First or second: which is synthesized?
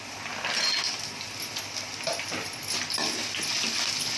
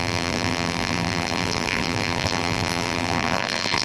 second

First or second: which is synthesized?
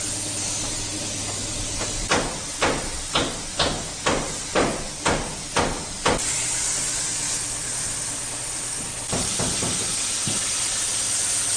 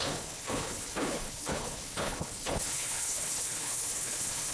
second